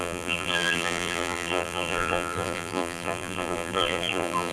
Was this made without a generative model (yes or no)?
no